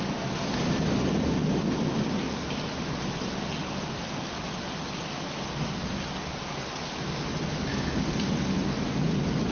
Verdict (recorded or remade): recorded